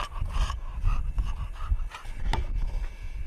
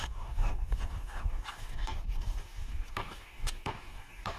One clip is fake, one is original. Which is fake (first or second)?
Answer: second